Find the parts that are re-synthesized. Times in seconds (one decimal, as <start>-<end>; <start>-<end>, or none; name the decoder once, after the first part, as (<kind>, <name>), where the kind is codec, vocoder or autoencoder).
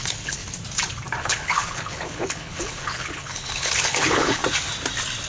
0.0-0.4 (codec, HILCodec); 1.2-4.4